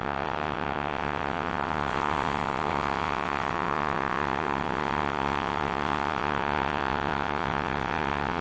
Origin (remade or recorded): remade